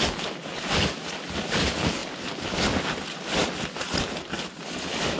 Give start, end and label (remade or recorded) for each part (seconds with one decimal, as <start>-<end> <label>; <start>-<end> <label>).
0.0-5.2 recorded